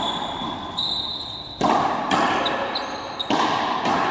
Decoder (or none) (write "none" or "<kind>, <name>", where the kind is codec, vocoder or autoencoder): none